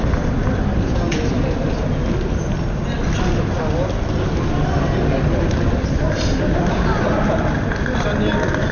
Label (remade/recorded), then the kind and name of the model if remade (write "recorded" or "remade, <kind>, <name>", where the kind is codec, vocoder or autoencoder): recorded